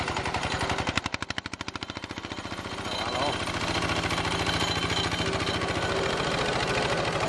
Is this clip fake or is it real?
real